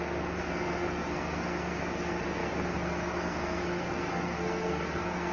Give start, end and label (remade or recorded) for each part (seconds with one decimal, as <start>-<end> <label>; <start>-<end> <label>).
0.0-5.3 remade